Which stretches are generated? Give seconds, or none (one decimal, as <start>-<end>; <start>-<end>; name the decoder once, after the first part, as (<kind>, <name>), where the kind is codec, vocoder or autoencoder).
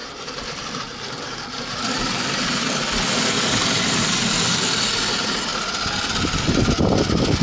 0.0-4.0 (vocoder, BigVGAN v2)